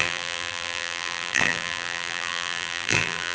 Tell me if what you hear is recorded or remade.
remade